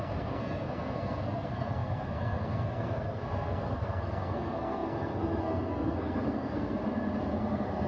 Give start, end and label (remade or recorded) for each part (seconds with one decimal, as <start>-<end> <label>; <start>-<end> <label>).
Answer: 0.0-6.8 remade; 6.8-7.4 recorded; 7.4-7.9 remade